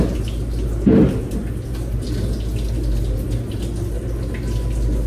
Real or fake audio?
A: real